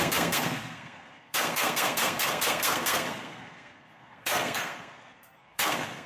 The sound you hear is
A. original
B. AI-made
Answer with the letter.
B